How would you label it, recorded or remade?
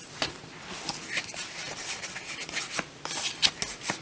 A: recorded